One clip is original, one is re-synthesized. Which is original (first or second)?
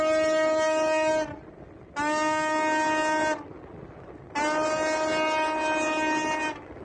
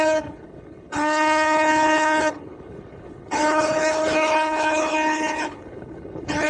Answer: first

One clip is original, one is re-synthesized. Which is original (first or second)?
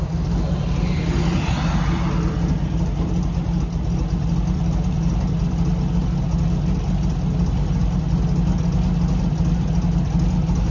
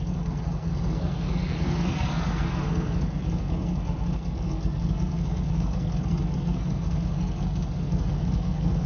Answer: first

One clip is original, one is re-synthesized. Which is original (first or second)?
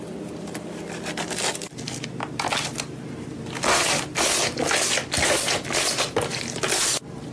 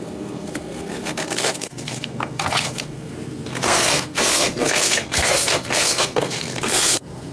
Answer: first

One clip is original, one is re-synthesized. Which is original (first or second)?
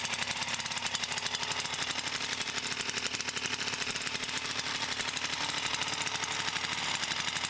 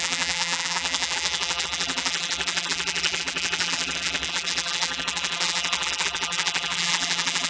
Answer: first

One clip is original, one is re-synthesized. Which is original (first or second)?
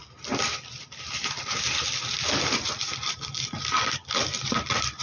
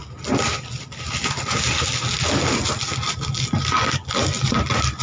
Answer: second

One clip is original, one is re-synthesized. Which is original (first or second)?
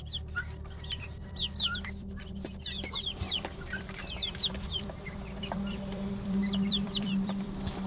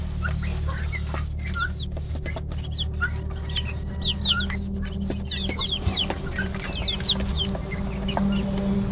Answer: second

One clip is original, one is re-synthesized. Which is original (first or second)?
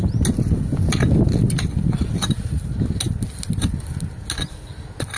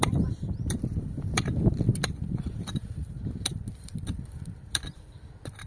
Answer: first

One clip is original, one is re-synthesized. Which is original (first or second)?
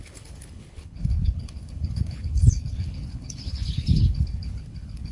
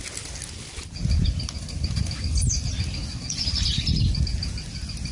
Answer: second